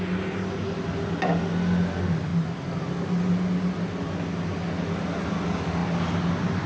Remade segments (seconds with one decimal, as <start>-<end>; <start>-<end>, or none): none